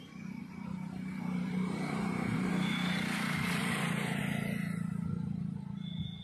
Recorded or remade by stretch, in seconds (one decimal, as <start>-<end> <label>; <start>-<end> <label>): 0.0-0.4 recorded; 0.4-2.5 remade; 2.5-3.6 recorded; 3.6-4.2 remade; 4.2-6.2 recorded

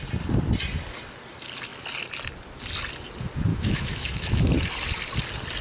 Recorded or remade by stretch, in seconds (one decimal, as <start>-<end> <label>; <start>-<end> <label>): 0.0-3.5 recorded; 3.5-4.5 remade; 4.5-5.6 recorded

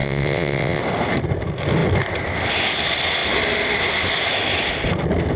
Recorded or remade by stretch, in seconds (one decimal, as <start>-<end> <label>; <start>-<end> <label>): 0.0-0.8 remade; 0.8-5.4 recorded

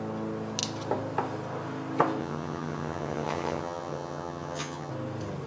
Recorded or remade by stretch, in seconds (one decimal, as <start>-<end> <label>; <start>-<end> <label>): 0.0-2.2 recorded; 2.2-4.9 remade; 4.9-5.5 recorded

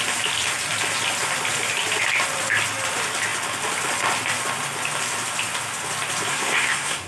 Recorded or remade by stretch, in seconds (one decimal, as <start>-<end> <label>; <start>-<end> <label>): 0.0-6.3 recorded; 6.3-7.1 remade

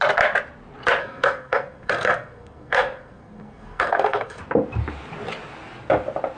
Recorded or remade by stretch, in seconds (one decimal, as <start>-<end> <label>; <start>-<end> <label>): 0.0-1.0 recorded; 1.0-4.4 remade; 4.4-6.4 recorded